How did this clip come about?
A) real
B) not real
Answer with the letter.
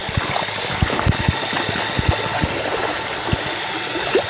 A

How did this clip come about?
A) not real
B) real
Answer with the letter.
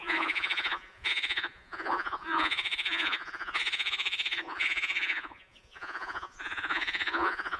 A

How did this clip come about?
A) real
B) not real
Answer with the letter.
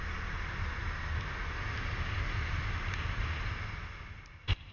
A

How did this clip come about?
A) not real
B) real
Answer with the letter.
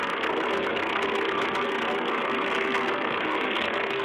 A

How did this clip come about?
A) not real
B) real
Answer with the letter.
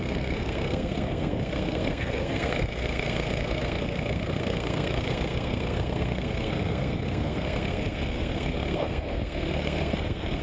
A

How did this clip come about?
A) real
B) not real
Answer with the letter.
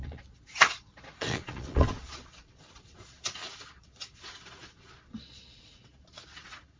B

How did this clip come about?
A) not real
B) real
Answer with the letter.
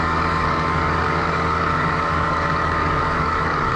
A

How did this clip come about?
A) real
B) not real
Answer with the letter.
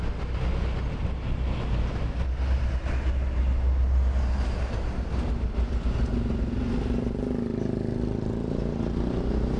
A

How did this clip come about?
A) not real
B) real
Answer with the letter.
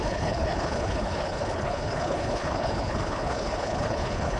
A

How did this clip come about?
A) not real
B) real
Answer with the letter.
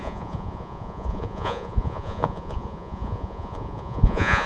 A